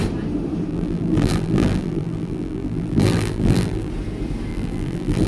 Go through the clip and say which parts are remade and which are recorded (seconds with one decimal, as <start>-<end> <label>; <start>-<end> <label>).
0.0-0.7 recorded; 0.7-3.9 remade; 3.9-4.5 recorded; 4.5-5.3 remade